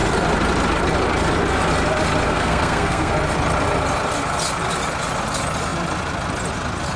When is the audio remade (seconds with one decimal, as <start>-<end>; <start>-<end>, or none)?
2.3-3.1